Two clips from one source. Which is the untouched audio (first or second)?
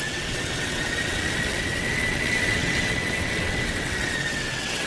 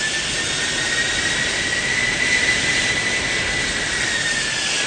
second